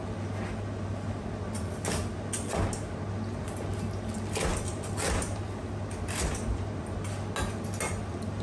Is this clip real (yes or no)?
yes